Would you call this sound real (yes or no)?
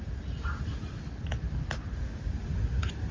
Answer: yes